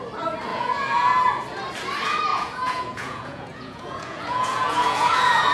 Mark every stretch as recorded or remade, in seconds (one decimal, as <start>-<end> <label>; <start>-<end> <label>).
0.0-0.5 recorded; 0.5-1.2 remade; 1.2-2.3 recorded; 2.3-5.5 remade